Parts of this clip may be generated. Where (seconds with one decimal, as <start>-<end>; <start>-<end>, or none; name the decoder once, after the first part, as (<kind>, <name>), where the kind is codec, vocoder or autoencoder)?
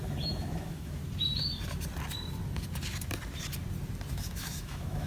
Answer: 0.0-1.0 (autoencoder, DAC-VAE); 4.1-5.1